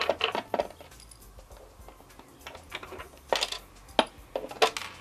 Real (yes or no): yes